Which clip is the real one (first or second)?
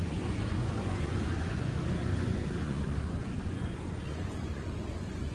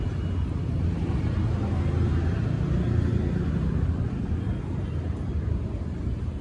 second